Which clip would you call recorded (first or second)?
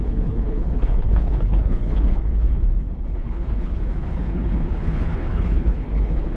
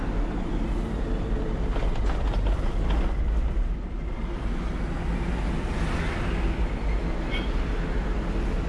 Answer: second